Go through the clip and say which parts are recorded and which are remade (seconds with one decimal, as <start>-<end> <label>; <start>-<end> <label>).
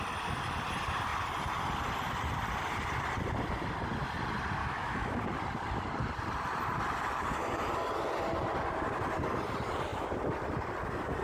0.0-4.6 recorded; 4.6-5.2 remade; 5.2-11.2 recorded